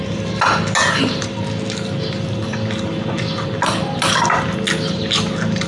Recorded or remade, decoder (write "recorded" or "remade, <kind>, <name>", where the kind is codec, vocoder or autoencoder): recorded